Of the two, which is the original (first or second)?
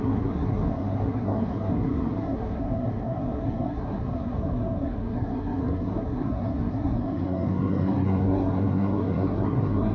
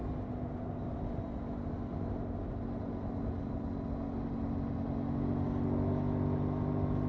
second